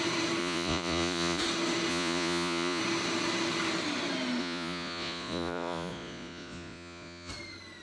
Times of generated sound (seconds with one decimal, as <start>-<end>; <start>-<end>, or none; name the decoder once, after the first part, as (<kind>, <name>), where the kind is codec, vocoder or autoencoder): 0.4-1.4 (vocoder, Vocos); 1.9-2.8; 4.4-7.3